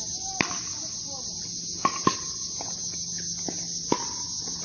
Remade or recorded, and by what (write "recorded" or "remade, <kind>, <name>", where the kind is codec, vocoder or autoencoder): recorded